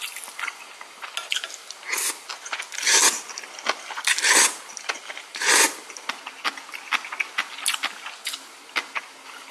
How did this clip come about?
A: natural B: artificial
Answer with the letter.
A